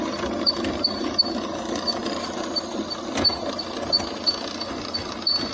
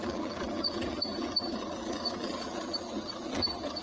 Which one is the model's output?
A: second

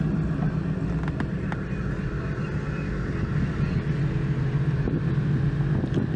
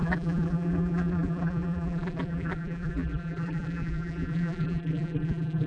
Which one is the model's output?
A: second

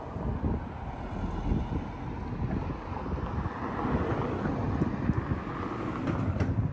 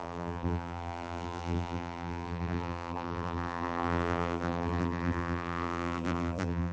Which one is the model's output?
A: second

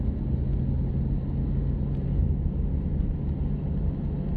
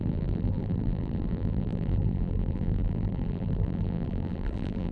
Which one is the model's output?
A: second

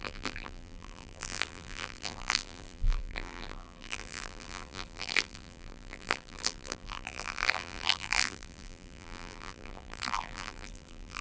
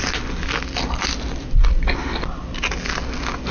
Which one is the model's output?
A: first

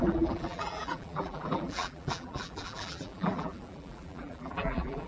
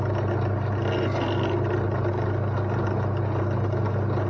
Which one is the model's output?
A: first